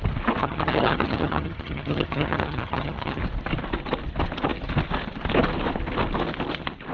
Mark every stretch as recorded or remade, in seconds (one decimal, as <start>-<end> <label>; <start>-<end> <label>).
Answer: 0.0-0.4 recorded; 0.4-3.2 remade; 3.2-6.9 recorded